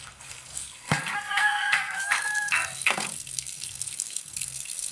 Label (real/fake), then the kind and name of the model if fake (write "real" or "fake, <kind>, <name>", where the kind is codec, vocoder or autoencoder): fake, codec, SNAC